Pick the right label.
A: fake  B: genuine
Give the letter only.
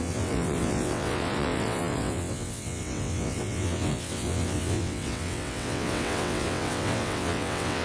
A